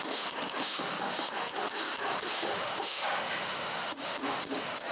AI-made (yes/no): yes